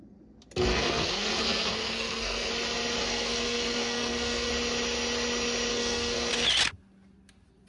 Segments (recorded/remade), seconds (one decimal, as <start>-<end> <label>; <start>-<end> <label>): 0.0-0.7 recorded; 0.7-2.5 remade; 2.5-3.0 recorded; 3.0-4.5 remade; 4.5-5.7 recorded; 5.7-6.3 remade; 6.3-7.7 recorded